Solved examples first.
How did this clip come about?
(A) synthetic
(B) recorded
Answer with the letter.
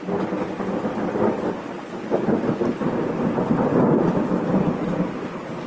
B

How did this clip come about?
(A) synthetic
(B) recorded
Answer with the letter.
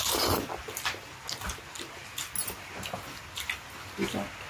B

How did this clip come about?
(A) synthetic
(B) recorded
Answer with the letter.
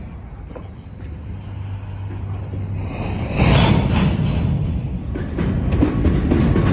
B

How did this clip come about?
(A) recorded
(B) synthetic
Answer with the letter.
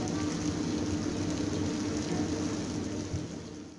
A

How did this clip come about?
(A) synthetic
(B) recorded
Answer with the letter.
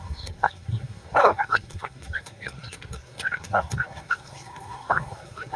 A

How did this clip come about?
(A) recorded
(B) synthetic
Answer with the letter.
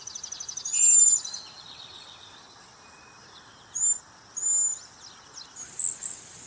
A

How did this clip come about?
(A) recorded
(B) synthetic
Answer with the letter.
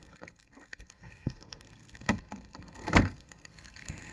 B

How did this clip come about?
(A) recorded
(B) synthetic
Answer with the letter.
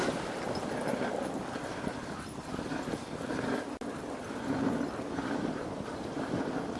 A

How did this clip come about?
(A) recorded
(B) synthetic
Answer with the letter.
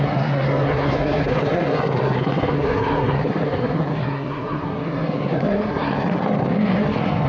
B